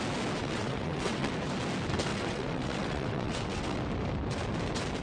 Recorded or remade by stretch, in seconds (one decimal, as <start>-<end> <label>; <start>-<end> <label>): 0.0-0.4 recorded; 0.4-1.3 remade; 1.3-2.1 recorded; 2.1-3.8 remade; 3.8-5.0 recorded